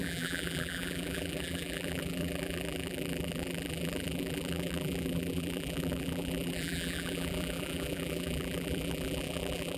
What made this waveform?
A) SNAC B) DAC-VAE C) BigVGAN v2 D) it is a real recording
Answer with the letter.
C